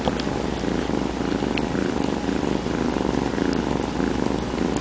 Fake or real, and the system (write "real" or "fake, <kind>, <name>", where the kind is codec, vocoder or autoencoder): real